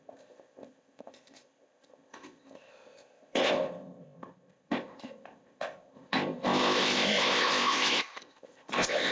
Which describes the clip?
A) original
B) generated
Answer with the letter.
B